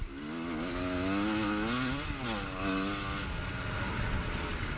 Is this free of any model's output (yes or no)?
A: yes